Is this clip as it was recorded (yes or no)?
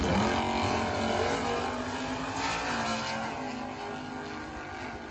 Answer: yes